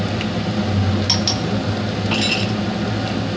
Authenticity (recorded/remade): recorded